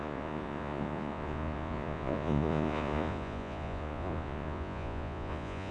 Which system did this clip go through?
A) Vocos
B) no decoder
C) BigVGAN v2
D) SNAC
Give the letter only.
A